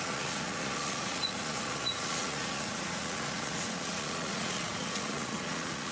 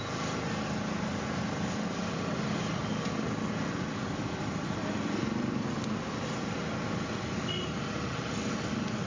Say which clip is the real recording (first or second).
second